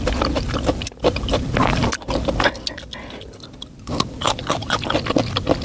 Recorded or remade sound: recorded